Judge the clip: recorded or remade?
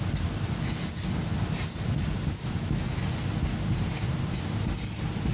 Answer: recorded